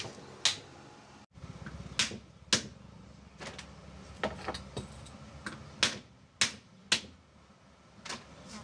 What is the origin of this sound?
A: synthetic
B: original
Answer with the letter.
B